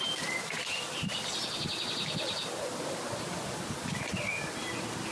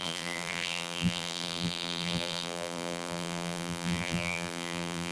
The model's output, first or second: second